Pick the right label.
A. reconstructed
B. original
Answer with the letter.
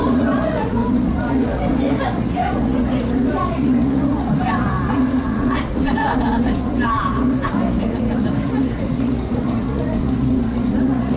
A